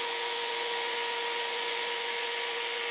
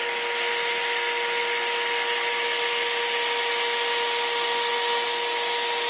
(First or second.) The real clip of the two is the second